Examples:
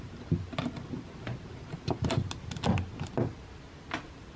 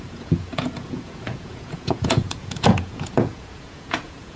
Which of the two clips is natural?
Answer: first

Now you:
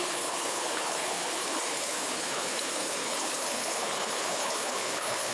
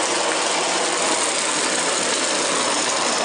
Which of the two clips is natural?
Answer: second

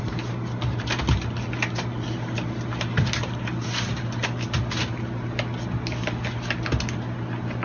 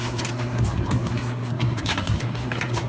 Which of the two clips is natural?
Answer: first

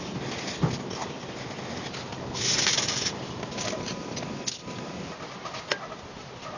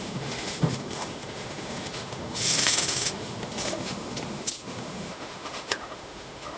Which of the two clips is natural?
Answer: first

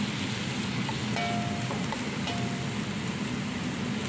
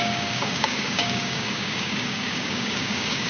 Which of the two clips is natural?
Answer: first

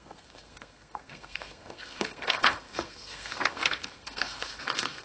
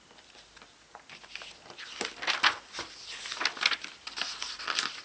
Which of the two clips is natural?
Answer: second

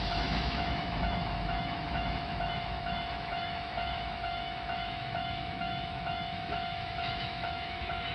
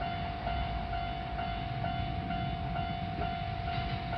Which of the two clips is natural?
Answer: second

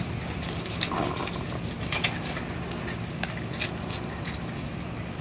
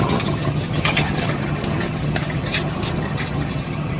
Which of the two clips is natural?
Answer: first